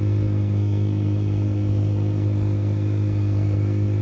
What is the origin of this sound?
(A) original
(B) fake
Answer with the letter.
B